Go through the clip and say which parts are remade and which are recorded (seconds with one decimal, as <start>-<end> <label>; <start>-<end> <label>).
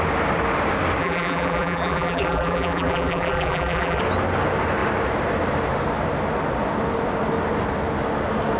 0.0-1.0 recorded; 1.0-4.0 remade; 4.0-8.6 recorded